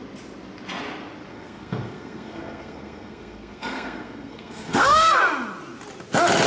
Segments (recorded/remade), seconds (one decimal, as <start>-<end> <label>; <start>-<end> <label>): 0.0-1.3 recorded; 1.3-5.2 remade; 5.2-6.5 recorded